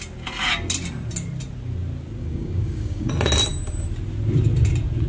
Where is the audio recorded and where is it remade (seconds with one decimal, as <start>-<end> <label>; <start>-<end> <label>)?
0.0-2.2 recorded; 2.2-3.1 remade; 3.1-5.1 recorded